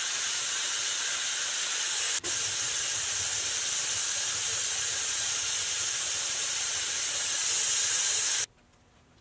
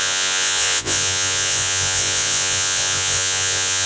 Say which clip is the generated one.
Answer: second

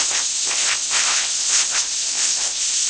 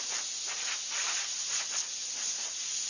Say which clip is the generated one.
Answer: first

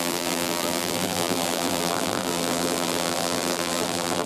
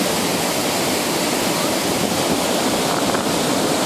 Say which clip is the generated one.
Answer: first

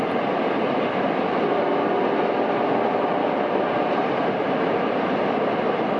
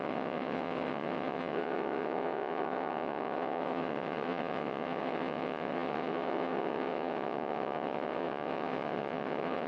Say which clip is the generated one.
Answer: second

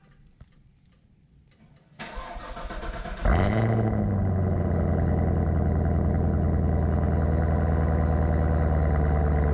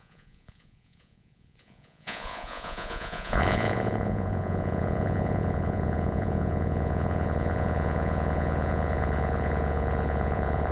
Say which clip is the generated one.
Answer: second